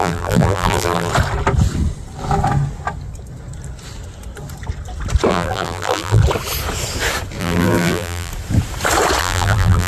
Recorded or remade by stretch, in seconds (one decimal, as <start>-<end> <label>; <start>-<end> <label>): 0.0-1.1 remade; 1.1-5.3 recorded; 5.3-6.2 remade; 6.2-7.4 recorded; 7.4-8.3 remade; 8.3-9.2 recorded; 9.2-9.9 remade